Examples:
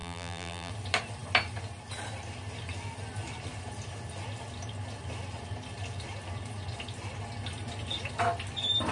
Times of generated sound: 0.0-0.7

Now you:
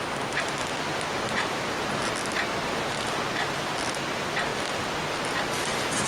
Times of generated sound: none

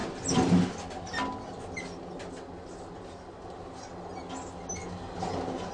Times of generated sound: none

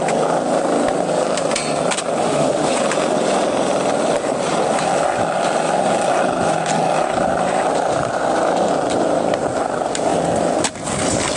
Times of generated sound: 2.2-2.7

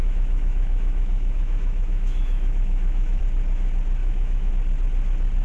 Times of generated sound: 0.0-3.2; 4.0-4.5

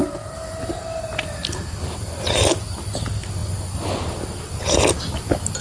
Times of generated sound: none